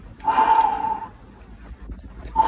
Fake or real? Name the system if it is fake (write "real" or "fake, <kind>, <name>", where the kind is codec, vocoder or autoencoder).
real